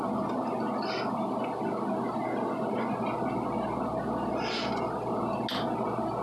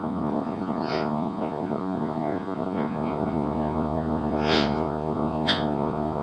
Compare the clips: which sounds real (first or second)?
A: first